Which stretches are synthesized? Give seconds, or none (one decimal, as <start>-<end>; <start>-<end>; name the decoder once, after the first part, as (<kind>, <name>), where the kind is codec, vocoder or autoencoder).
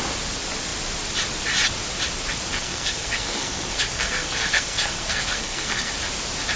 2.5-5.9 (codec, SNAC)